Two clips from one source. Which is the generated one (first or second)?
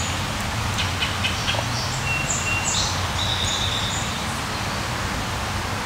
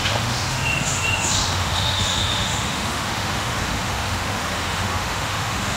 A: second